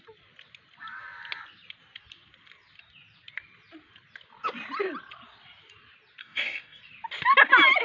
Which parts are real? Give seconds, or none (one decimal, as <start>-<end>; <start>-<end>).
0.0-6.2; 6.8-7.8